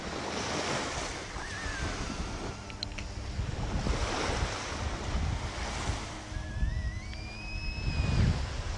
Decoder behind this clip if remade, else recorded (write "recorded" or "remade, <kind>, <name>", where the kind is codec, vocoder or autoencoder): recorded